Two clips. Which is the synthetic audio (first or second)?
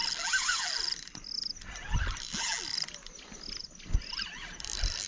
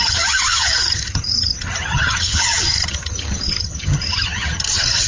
second